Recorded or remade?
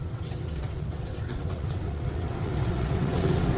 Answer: remade